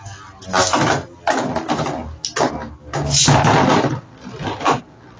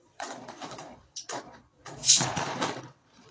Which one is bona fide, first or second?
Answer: first